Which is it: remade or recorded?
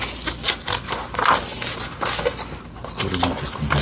recorded